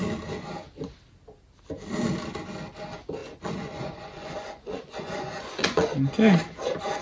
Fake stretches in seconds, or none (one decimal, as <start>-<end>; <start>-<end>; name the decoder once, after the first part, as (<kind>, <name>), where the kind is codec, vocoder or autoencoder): 3.2-6.1 (vocoder, Vocos)